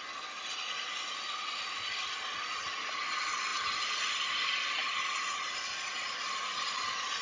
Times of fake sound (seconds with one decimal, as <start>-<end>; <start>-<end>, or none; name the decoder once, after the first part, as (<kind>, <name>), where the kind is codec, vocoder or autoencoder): none